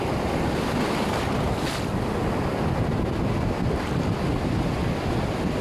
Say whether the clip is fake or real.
real